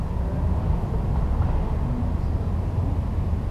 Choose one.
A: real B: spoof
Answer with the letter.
A